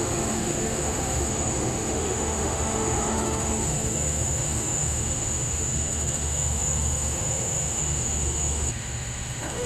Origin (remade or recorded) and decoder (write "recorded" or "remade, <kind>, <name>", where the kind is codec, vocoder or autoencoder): remade, autoencoder, DAC-VAE